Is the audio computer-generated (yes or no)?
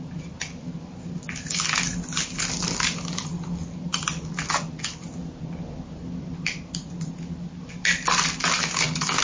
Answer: no